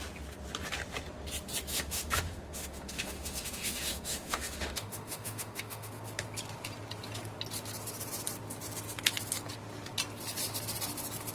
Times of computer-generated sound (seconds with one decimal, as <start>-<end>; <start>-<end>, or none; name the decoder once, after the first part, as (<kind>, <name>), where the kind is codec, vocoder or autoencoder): 1.7-5.9 (autoencoder, DAC-VAE)